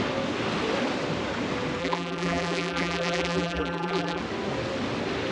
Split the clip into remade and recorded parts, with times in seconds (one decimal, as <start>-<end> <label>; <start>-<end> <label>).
0.0-1.8 recorded; 1.8-4.2 remade; 4.2-5.3 recorded